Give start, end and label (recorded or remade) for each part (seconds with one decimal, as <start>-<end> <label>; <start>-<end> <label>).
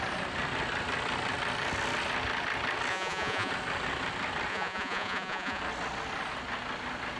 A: 0.0-2.9 recorded; 2.9-3.5 remade; 3.5-4.5 recorded; 4.5-5.6 remade; 5.6-7.2 recorded